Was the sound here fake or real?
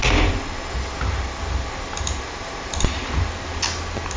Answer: real